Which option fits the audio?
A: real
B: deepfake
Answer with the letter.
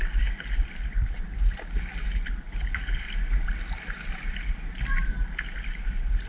A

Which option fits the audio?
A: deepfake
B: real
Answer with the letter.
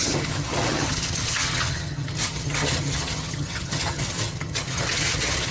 A